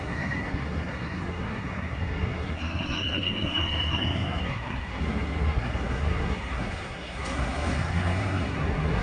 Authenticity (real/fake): fake